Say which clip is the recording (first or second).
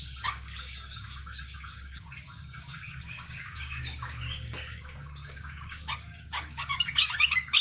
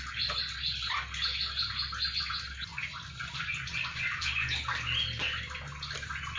second